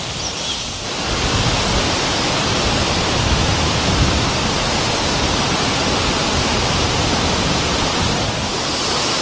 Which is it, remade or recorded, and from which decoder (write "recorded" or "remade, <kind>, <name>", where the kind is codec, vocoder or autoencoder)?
recorded